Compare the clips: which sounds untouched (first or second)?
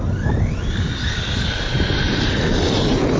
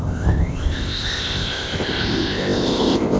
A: first